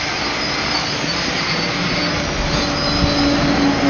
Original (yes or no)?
yes